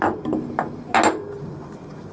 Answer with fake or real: real